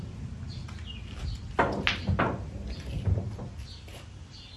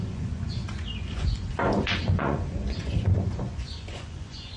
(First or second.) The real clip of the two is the first